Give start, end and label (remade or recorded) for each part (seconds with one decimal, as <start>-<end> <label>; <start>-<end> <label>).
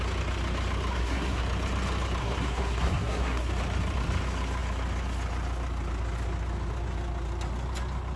0.0-0.9 recorded; 0.9-1.4 remade; 1.4-2.2 recorded; 2.2-3.5 remade; 3.5-8.2 recorded